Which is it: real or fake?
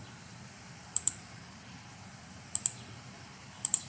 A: fake